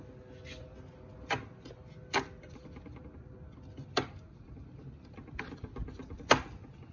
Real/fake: real